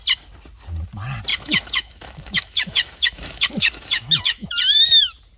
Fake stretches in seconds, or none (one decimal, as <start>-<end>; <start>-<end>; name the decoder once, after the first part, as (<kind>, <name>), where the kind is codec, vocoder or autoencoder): 1.3-4.5 (autoencoder, DAC-VAE)